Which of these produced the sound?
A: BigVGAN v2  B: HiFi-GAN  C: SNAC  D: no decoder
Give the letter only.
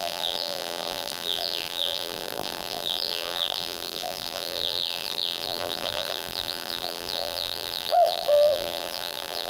A